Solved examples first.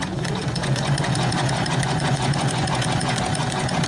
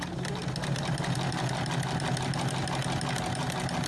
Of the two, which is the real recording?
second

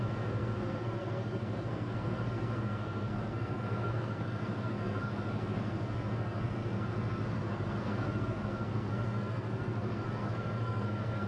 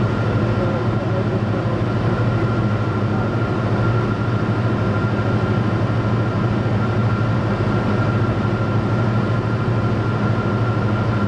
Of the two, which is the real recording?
second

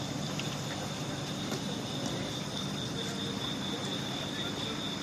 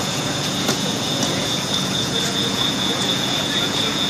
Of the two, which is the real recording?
first